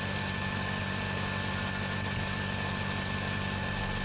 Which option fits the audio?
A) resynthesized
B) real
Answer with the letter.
B